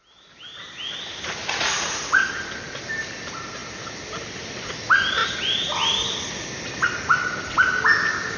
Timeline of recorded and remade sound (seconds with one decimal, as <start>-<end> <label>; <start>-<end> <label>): 0.0-1.4 recorded; 1.4-2.3 remade; 2.3-8.4 recorded